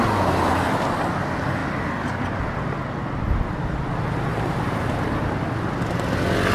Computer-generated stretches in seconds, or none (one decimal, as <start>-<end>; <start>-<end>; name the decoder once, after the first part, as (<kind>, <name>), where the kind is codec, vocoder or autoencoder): none